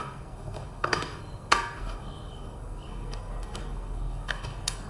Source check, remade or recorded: remade